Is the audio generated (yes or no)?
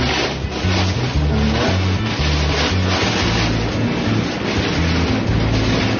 no